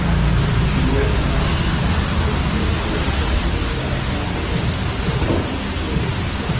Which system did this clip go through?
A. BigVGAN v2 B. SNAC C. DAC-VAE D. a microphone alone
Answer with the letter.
D